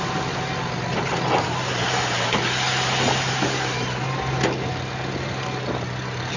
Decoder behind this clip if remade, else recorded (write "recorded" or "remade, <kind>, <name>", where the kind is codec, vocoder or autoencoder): recorded